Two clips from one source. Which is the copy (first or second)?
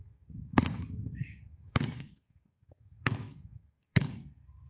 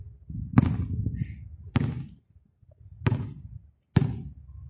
first